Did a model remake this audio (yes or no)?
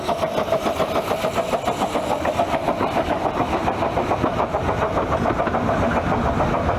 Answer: no